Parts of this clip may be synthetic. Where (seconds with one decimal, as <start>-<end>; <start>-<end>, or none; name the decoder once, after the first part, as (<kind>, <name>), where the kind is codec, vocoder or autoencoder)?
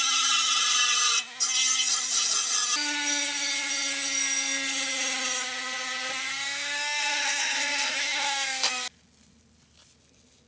6.3-8.7 (codec, SNAC)